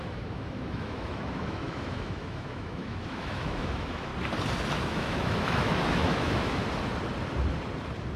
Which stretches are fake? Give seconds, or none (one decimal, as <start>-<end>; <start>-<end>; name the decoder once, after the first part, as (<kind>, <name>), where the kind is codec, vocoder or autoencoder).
0.0-4.1 (autoencoder, DAC-VAE); 4.8-6.6